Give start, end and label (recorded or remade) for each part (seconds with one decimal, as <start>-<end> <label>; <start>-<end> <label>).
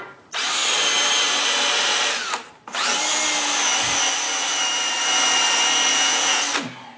0.0-5.9 recorded; 5.9-6.4 remade; 6.4-7.0 recorded